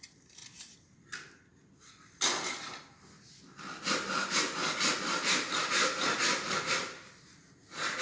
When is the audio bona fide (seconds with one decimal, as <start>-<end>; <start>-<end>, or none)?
0.0-8.0

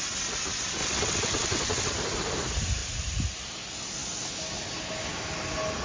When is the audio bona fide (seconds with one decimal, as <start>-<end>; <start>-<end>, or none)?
0.0-0.8; 1.9-5.8

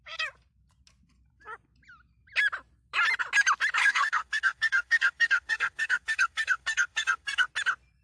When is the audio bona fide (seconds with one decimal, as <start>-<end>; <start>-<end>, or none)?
0.0-3.8; 7.5-8.0

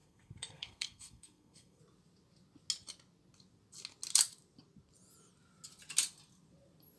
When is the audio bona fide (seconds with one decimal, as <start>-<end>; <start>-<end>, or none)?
1.8-7.0

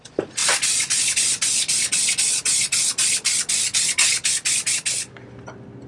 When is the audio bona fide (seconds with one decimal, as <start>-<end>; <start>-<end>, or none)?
0.0-5.9

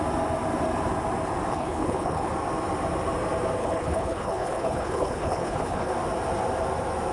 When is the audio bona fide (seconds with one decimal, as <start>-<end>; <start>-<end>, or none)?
0.0-1.5; 2.3-3.6; 5.9-7.1

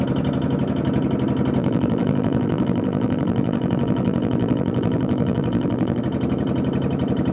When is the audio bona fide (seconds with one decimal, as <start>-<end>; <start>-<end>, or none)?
0.0-1.6; 6.0-7.3

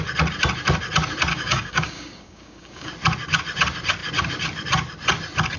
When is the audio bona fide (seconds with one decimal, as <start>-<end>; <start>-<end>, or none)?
0.0-1.3; 2.9-5.6